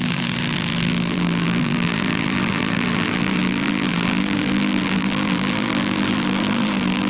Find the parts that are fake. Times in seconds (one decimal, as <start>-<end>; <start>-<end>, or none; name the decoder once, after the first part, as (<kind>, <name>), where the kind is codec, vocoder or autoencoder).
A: 0.0-7.1 (vocoder, BigVGAN v2)